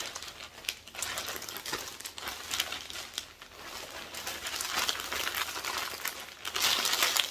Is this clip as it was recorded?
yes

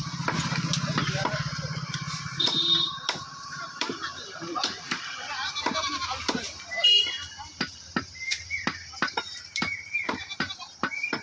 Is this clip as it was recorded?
no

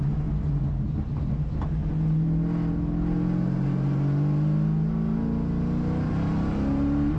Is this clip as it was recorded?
yes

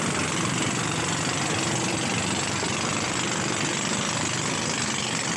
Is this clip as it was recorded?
no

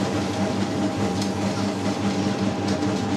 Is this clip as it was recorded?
yes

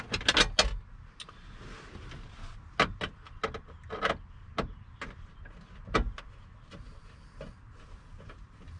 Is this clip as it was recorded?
yes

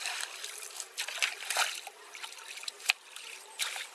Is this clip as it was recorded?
yes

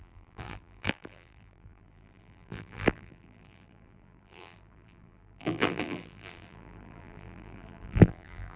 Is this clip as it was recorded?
no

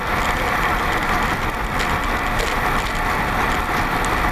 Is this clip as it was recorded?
yes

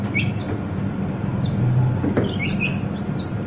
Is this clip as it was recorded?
yes